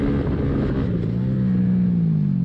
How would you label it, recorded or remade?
recorded